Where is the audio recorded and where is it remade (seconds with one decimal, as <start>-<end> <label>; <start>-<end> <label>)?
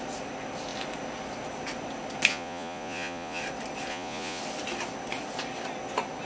0.0-2.3 recorded; 2.3-3.4 remade; 3.4-3.9 recorded; 3.9-4.4 remade; 4.4-6.3 recorded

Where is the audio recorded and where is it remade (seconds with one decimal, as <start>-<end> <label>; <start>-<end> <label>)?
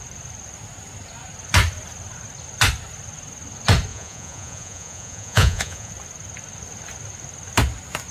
0.0-3.9 recorded; 3.9-5.9 remade; 5.9-8.1 recorded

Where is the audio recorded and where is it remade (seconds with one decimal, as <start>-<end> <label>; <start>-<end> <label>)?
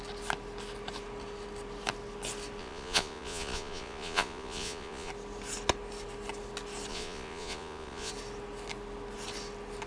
0.0-2.6 recorded; 2.6-5.1 remade; 5.1-6.9 recorded; 6.9-8.1 remade; 8.1-9.9 recorded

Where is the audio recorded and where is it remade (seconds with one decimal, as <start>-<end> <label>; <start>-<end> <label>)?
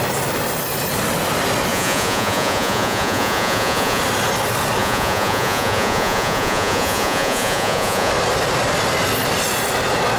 0.0-1.7 recorded; 1.7-4.0 remade; 4.0-4.8 recorded; 4.8-8.1 remade; 8.1-10.2 recorded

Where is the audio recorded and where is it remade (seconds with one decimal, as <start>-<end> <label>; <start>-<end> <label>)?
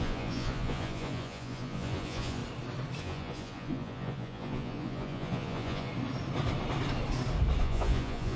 0.0-2.4 remade; 2.4-3.0 recorded; 3.0-5.9 remade; 5.9-7.6 recorded; 7.6-8.4 remade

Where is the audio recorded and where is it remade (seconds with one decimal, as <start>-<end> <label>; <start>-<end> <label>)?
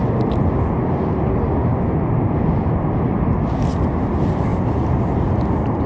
0.0-5.9 recorded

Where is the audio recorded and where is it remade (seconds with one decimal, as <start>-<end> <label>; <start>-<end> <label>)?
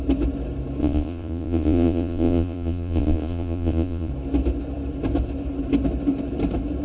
0.0-0.8 recorded; 0.8-4.1 remade; 4.1-6.8 recorded